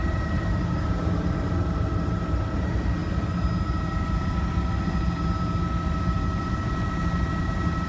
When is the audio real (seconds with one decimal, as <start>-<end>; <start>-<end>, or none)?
3.0-6.4